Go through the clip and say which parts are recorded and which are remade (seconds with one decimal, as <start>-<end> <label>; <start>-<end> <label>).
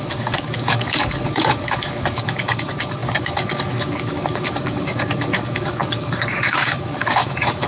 0.0-7.7 remade